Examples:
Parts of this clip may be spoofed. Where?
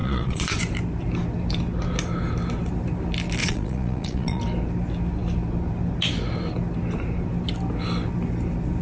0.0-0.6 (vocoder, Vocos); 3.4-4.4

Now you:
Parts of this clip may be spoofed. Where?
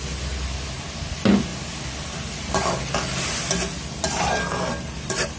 none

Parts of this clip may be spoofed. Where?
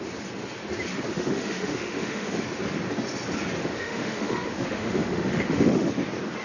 1.1-2.4 (autoencoder, DAC-VAE); 3.6-5.9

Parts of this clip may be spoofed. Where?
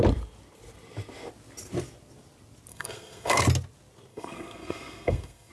2.7-3.4 (codec, SNAC); 4.1-5.5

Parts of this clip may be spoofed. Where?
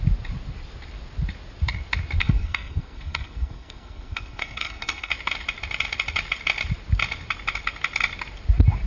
2.2-5.1 (codec, SNAC)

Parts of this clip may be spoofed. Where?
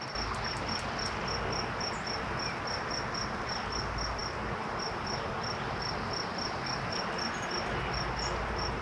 none